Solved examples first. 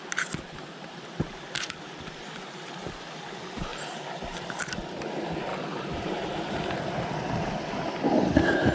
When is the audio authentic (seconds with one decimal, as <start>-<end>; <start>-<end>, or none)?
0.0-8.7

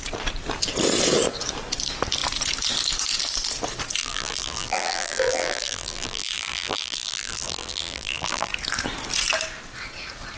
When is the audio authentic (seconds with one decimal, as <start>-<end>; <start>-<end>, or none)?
0.0-4.0; 8.5-10.4

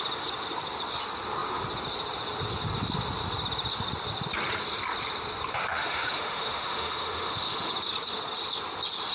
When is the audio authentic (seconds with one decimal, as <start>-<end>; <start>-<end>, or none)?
0.0-5.7; 7.7-9.1

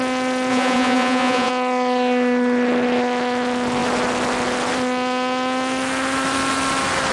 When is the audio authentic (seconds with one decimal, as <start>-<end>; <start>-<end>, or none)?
0.0-0.5; 1.5-7.1

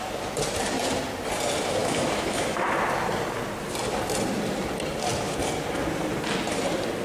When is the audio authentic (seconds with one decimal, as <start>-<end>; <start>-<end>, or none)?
0.0-1.8; 2.8-7.0